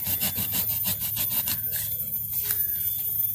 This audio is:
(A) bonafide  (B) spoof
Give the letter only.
A